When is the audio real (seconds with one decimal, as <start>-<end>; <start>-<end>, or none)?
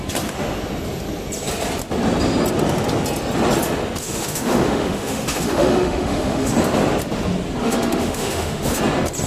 0.0-4.0; 6.5-7.6; 8.8-9.3